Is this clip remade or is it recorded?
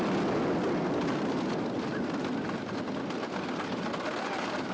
recorded